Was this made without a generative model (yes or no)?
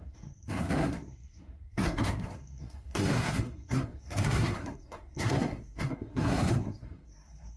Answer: no